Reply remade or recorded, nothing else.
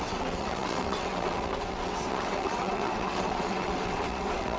remade